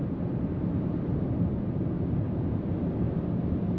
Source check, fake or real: real